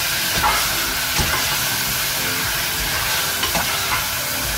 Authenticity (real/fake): real